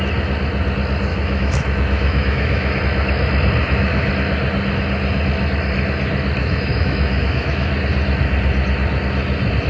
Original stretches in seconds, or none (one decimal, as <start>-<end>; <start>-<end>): 0.0-1.1; 2.8-3.6; 4.1-6.4; 7.7-9.7